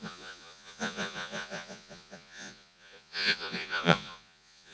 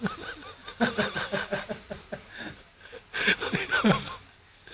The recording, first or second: second